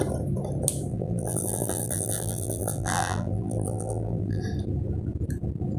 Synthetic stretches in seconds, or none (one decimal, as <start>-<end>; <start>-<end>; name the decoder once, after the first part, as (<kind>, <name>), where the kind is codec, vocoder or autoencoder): 0.9-4.4 (vocoder, BigVGAN v2)